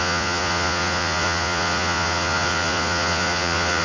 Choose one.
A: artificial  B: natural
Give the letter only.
A